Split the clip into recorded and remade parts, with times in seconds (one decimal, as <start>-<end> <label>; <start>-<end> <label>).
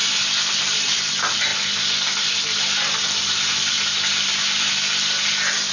0.0-5.7 recorded